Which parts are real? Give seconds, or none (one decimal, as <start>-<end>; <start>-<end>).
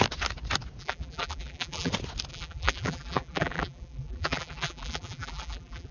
0.0-0.8; 1.9-2.3